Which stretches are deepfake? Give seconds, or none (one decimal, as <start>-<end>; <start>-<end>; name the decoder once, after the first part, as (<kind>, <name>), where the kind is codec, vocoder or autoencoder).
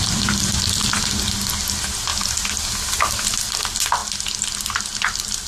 none